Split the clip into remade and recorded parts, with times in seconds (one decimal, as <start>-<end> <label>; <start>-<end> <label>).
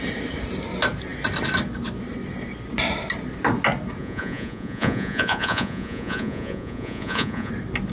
0.0-4.0 recorded; 4.0-7.5 remade; 7.5-7.9 recorded